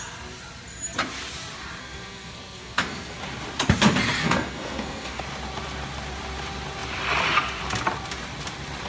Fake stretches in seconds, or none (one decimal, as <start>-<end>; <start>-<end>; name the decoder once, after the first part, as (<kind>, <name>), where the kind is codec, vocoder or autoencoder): 1.8-3.2 (codec, SNAC); 4.2-5.2